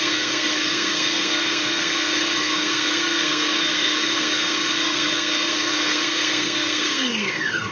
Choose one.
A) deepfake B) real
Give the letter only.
A